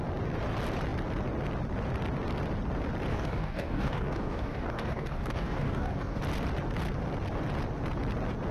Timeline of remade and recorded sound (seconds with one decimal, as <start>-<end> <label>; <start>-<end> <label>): 0.0-3.1 recorded; 3.1-6.2 remade; 6.2-8.5 recorded